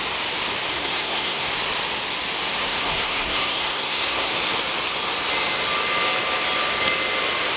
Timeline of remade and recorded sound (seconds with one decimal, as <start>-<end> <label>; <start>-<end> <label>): 0.0-0.7 recorded; 0.7-1.5 remade; 1.5-2.6 recorded; 2.6-4.3 remade; 4.3-7.6 recorded